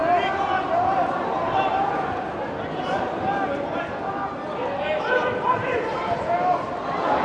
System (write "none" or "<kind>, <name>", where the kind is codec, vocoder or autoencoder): none